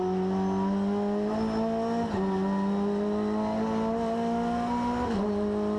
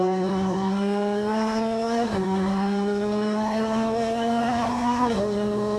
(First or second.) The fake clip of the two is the second